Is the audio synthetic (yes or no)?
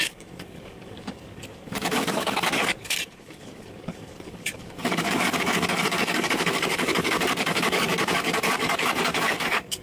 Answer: yes